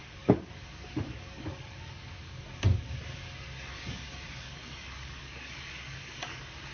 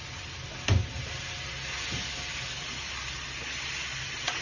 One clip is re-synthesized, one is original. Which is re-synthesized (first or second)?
first